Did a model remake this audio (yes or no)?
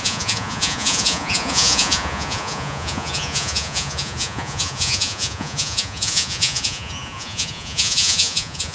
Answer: yes